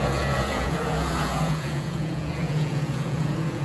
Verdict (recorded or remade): remade